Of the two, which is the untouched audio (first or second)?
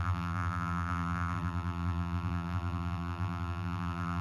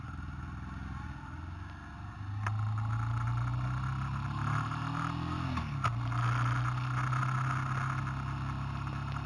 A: second